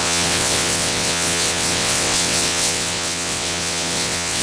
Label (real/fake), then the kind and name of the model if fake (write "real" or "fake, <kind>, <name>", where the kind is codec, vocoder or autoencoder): fake, vocoder, WaveNeXt